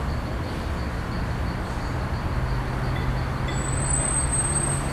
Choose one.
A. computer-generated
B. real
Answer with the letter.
B